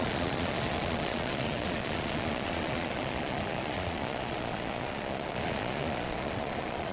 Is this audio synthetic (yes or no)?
yes